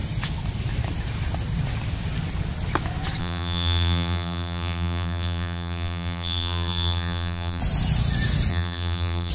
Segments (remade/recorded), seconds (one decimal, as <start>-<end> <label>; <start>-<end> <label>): 0.0-3.2 recorded; 3.2-7.6 remade; 7.6-8.5 recorded; 8.5-9.3 remade